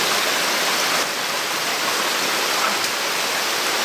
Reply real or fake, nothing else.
real